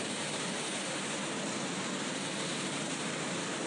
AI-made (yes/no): no